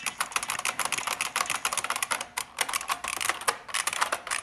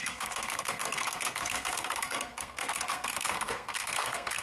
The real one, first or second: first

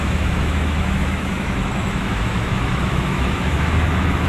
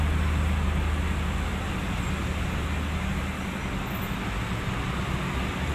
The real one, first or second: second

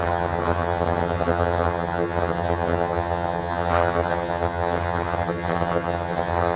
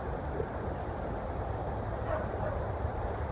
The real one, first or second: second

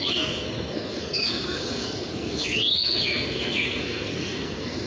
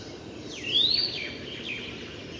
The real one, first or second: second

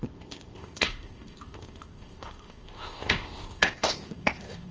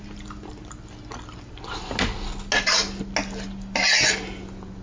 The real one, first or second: second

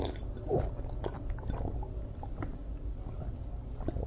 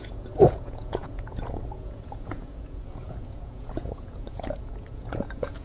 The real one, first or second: first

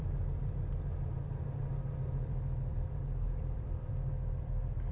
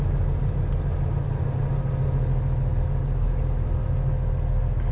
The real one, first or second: second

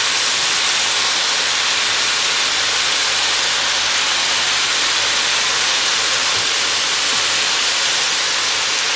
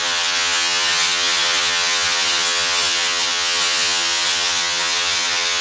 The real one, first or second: first